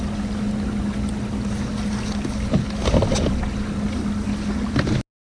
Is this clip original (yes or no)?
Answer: yes